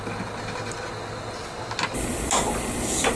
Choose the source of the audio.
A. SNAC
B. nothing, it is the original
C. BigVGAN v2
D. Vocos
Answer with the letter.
B